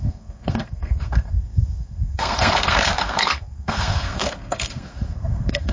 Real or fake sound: fake